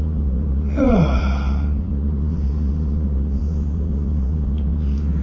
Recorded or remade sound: remade